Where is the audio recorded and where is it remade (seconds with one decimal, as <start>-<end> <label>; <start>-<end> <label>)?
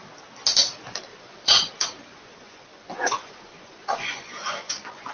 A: 0.0-1.1 recorded; 1.1-1.7 remade; 1.7-2.1 recorded; 2.1-5.1 remade